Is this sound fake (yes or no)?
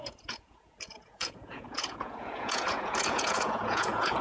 yes